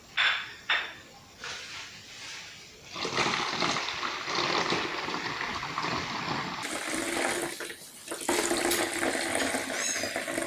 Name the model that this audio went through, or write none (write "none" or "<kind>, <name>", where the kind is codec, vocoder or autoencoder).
none